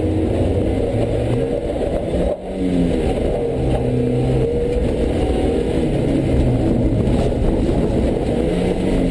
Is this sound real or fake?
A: real